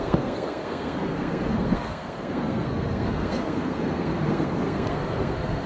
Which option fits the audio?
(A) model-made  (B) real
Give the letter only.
A